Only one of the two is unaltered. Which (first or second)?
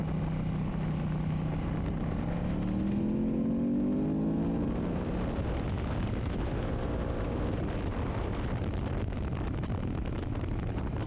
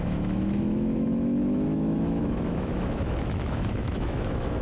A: first